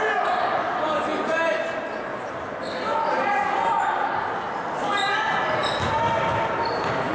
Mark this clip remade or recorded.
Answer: recorded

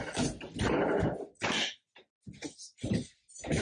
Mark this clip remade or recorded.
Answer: recorded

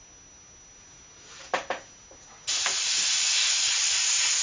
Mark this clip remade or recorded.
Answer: recorded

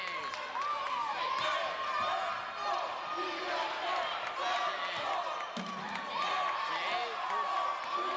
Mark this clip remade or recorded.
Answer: recorded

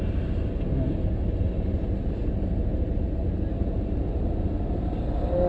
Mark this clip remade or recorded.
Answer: recorded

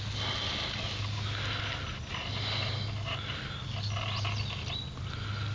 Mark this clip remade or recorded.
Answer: recorded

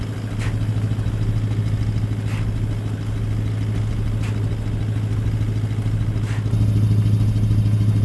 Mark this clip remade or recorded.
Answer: recorded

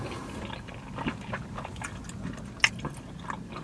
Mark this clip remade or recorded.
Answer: recorded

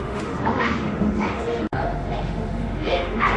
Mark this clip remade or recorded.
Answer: remade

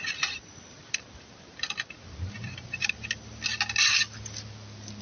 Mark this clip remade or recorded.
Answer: recorded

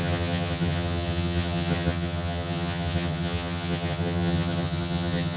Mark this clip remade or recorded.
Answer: remade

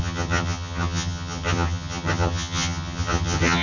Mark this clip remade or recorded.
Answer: remade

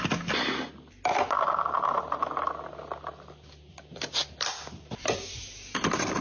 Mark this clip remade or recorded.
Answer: recorded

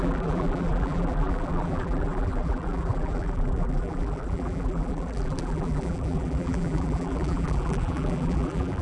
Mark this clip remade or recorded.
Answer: remade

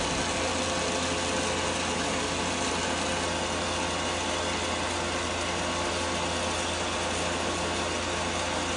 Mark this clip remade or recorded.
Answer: recorded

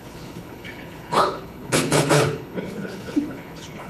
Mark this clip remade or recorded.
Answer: remade